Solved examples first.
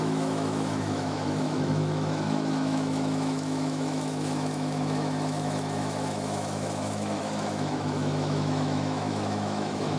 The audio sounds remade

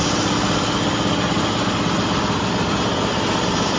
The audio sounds recorded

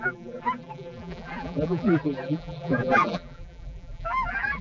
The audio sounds remade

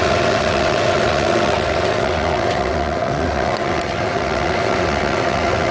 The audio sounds remade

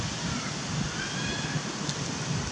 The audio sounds recorded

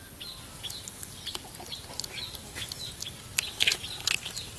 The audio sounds recorded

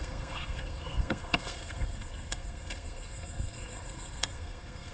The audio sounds remade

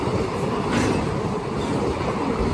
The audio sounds recorded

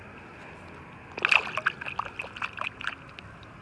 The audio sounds recorded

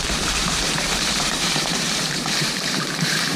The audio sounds remade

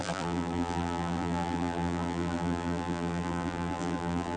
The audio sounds remade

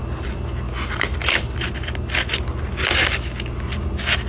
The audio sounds recorded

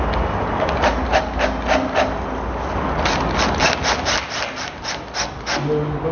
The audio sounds recorded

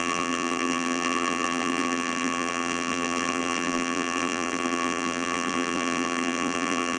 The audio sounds remade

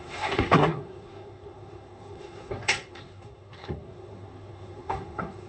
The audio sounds remade